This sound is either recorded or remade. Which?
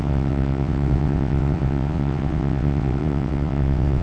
remade